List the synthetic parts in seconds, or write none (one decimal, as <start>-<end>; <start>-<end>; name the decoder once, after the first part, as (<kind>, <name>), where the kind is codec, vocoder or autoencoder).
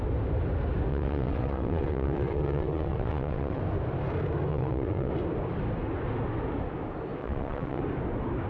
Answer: 0.9-3.6 (vocoder, WaveNeXt); 4.5-5.1; 7.2-7.8